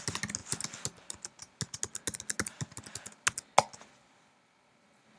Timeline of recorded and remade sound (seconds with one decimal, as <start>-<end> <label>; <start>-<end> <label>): 0.0-5.2 recorded